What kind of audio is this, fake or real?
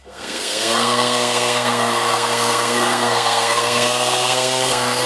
fake